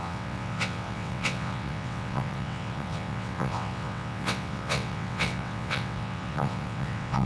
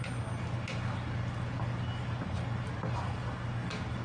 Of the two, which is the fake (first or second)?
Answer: first